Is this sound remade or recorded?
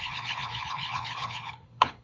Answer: remade